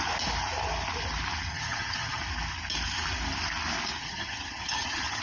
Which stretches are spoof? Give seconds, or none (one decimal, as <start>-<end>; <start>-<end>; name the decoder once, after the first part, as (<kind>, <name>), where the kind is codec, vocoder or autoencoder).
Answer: 1.5-2.2 (vocoder, HiFi-GAN); 4.0-5.2